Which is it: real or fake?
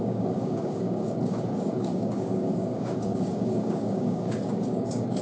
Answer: fake